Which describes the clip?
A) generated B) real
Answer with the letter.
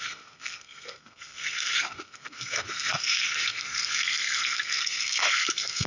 A